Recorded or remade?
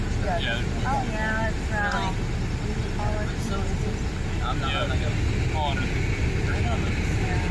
recorded